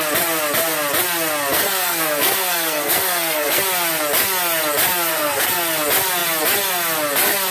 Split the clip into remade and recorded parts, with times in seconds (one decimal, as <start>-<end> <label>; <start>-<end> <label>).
0.0-1.5 recorded; 1.5-3.6 remade; 3.6-5.1 recorded; 5.1-5.6 remade; 5.6-7.5 recorded